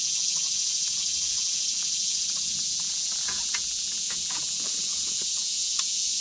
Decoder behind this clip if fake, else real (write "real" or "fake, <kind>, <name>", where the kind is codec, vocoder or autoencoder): fake, vocoder, Vocos